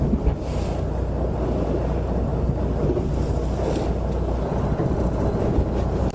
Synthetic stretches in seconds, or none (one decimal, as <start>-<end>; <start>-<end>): none

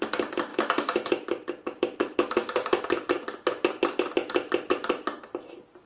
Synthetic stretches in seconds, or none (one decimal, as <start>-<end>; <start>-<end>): 0.5-1.1

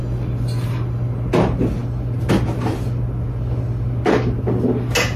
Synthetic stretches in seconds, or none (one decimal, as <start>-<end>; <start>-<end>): none

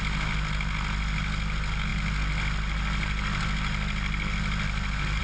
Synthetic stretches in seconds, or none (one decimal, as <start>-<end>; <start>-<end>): none

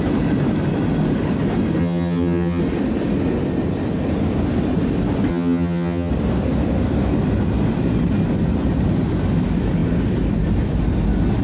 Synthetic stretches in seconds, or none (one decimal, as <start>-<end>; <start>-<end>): 1.8-2.6; 5.3-6.1